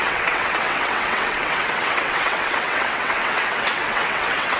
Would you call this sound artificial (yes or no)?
yes